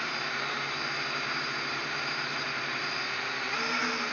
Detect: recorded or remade remade